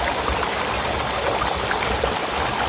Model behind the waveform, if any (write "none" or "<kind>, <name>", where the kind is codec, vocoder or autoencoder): none